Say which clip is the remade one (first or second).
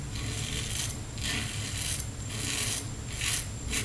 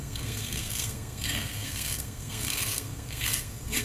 second